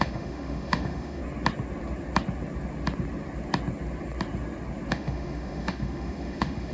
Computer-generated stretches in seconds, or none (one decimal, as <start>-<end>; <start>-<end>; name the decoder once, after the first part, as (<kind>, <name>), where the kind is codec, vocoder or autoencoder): 0.0-1.2 (autoencoder, DAC-VAE); 4.9-6.7